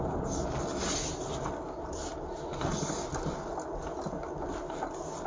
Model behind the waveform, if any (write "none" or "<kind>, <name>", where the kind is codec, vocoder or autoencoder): none